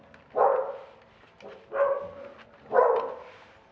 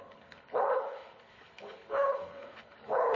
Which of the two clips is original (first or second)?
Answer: first